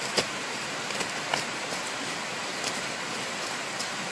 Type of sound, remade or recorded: recorded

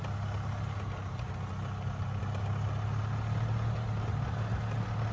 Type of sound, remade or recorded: recorded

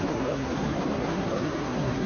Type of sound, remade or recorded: remade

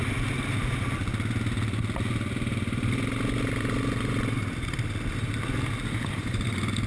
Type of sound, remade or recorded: recorded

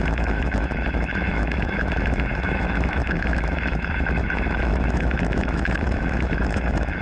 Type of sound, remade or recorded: remade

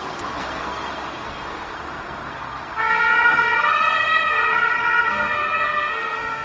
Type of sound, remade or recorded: remade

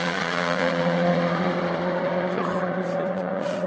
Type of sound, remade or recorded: remade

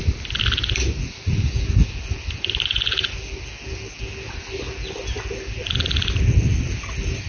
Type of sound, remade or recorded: recorded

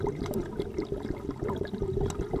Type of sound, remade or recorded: recorded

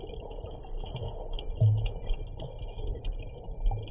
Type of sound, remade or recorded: recorded